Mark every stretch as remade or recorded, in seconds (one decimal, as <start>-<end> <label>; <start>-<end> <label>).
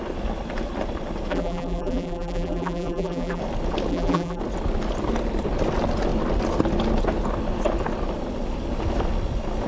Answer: 0.0-1.3 recorded; 1.3-3.4 remade; 3.4-3.9 recorded; 3.9-4.4 remade; 4.4-9.7 recorded